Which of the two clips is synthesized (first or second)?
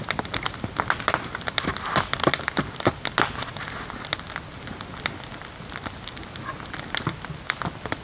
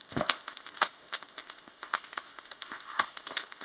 second